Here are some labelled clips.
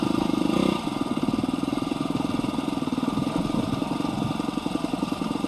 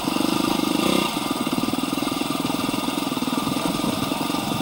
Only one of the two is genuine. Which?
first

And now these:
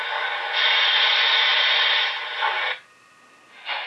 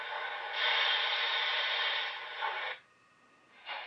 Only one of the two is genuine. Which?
first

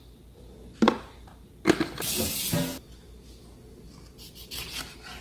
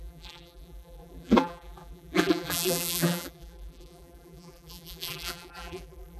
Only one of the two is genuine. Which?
first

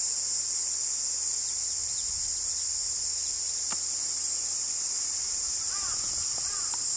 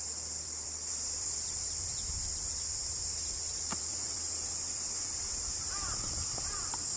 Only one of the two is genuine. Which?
first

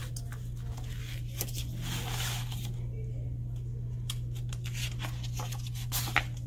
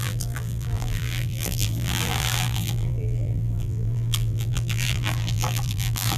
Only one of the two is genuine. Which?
first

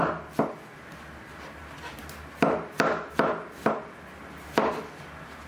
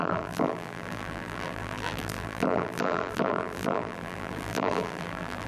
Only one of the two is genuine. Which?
first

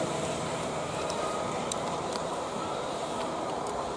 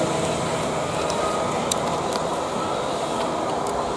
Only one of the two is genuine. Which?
second